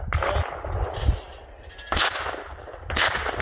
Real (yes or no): yes